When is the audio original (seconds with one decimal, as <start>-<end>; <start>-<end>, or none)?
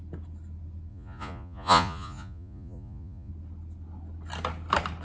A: 0.0-0.9; 3.3-5.0